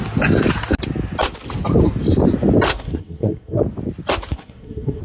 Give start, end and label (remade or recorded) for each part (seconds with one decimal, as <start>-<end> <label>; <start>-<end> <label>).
0.0-2.7 recorded; 2.7-3.6 remade; 3.6-4.3 recorded; 4.3-5.0 remade